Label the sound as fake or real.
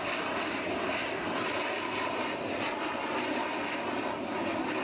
fake